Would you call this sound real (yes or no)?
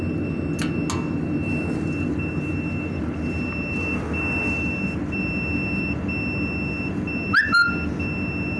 yes